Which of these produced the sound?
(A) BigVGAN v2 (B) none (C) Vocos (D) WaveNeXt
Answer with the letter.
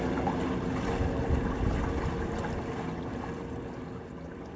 B